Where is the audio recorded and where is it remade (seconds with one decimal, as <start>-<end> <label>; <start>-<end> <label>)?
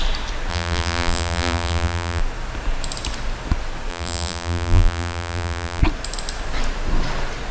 0.0-0.5 recorded; 0.5-2.2 remade; 2.2-3.9 recorded; 3.9-5.8 remade; 5.8-7.5 recorded